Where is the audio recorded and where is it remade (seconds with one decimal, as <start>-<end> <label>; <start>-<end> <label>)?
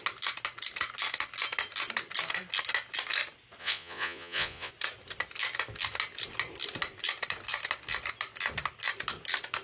0.0-3.6 recorded; 3.6-4.7 remade; 4.7-9.6 recorded